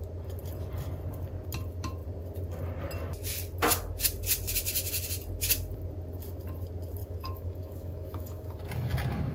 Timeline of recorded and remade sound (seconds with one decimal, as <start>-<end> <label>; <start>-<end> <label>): 0.0-7.0 recorded; 7.0-8.6 remade; 8.6-9.3 recorded

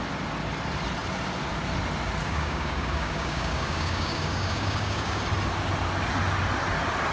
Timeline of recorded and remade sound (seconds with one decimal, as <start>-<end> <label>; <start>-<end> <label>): 0.0-2.2 recorded; 2.2-5.2 remade; 5.2-7.1 recorded